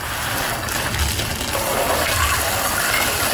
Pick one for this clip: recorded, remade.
recorded